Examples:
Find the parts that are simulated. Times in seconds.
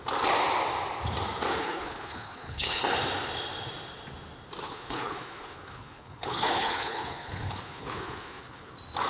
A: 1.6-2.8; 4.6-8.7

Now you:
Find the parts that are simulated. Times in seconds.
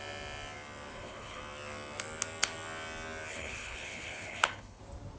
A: 0.9-1.4; 3.3-4.8